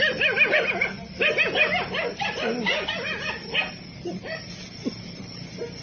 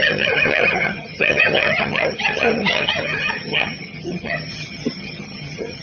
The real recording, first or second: first